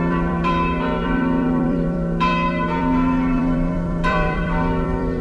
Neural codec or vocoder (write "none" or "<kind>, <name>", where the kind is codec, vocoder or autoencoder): vocoder, BigVGAN v2